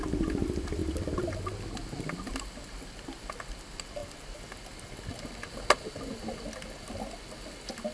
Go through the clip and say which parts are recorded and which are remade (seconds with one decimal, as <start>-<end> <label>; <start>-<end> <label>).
0.0-0.8 recorded; 0.8-1.4 remade; 1.4-7.9 recorded

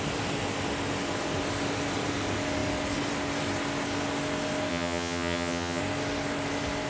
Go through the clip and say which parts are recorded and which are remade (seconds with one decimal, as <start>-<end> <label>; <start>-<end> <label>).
0.0-4.7 recorded; 4.7-5.8 remade; 5.8-6.9 recorded

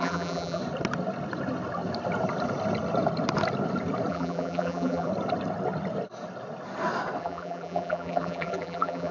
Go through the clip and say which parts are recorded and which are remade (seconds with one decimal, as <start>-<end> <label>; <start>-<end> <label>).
0.0-0.6 remade; 0.6-4.1 recorded; 4.1-5.1 remade; 5.1-7.2 recorded; 7.2-9.1 remade

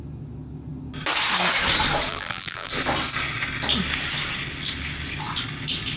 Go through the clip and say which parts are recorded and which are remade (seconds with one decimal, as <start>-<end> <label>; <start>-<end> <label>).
0.0-2.1 recorded; 2.1-2.7 remade; 2.7-6.0 recorded

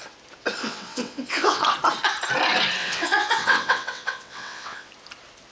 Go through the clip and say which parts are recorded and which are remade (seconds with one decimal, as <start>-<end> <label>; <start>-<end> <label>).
0.0-0.6 recorded; 0.6-1.7 remade; 1.7-2.8 recorded; 2.8-4.9 remade; 4.9-5.5 recorded

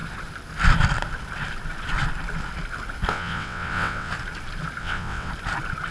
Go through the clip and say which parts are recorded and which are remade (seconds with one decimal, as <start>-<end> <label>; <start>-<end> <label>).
0.0-3.1 recorded; 3.1-4.1 remade; 4.1-4.8 recorded; 4.8-5.3 remade; 5.3-5.9 recorded